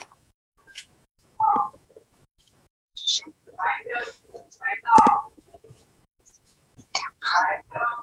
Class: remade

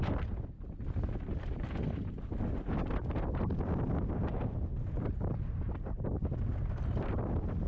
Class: recorded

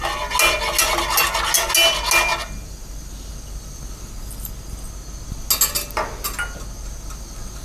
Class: recorded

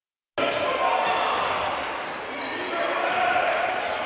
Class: recorded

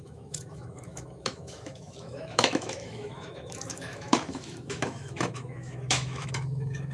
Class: remade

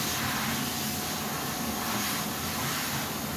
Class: recorded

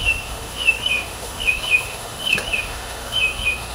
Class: remade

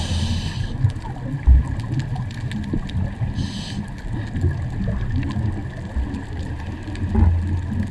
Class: recorded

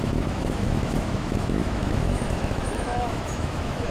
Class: remade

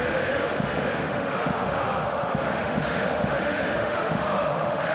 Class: remade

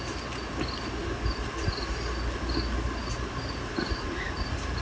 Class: recorded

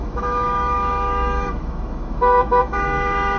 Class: remade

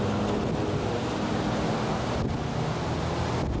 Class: recorded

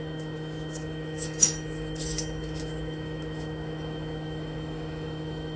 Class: remade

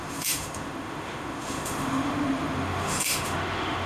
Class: remade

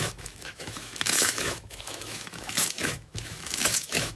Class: remade